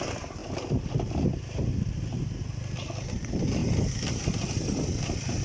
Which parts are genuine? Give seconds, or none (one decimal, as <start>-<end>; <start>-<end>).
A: 0.0-5.4